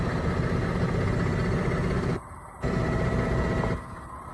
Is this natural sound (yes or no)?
yes